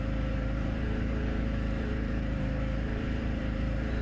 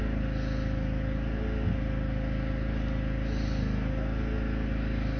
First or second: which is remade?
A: first